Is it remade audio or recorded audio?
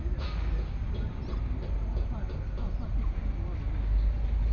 recorded